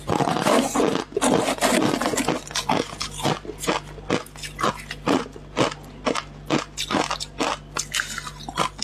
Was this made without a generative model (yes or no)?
yes